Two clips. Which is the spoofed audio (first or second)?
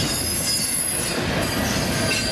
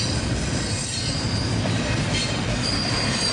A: second